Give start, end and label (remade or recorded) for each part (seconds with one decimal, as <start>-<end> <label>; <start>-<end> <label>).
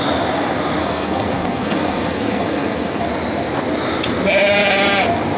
0.0-0.8 recorded; 0.8-3.0 remade; 3.0-5.4 recorded